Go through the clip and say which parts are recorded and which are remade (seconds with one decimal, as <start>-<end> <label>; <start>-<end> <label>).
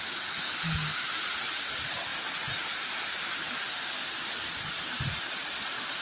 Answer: 0.0-6.0 recorded